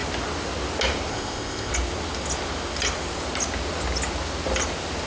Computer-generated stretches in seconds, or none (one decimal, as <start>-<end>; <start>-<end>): 1.1-1.7